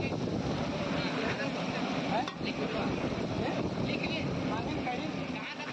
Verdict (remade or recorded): recorded